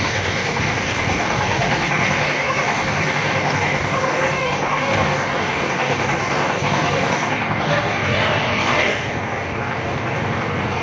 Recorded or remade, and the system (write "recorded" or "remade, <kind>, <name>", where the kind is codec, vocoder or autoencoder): remade, codec, DAC